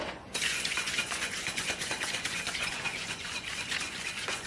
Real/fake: fake